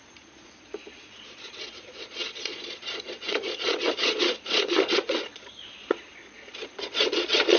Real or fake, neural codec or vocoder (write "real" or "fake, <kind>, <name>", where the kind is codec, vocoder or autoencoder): fake, vocoder, Vocos